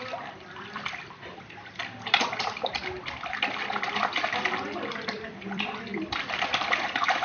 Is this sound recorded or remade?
remade